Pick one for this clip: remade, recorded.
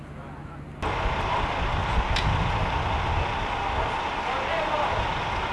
recorded